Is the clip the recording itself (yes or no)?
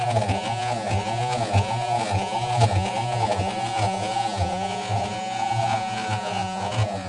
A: no